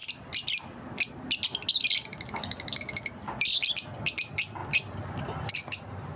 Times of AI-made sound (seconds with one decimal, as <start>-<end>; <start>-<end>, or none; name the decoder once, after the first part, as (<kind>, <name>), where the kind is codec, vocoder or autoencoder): none